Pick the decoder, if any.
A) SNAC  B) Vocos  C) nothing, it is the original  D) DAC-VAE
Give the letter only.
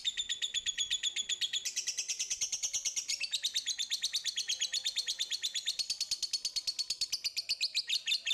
C